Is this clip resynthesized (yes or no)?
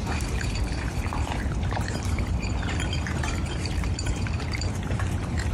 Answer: yes